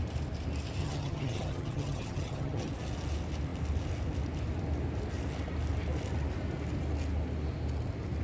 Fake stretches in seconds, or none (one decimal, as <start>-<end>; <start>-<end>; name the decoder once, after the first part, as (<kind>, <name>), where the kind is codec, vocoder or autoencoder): 0.8-2.7 (vocoder, HiFi-GAN)